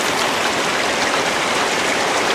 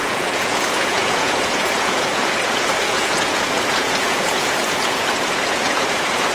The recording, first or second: first